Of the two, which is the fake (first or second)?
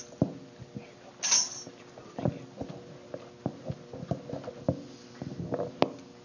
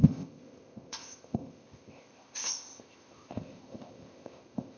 second